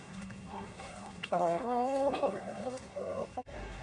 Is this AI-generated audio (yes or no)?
yes